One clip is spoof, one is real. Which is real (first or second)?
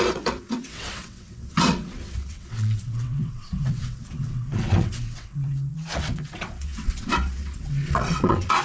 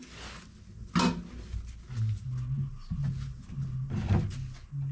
second